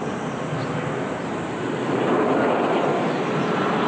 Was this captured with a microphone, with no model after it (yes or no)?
yes